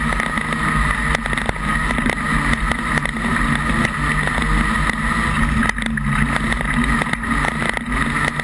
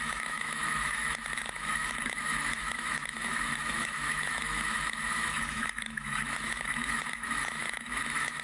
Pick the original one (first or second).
first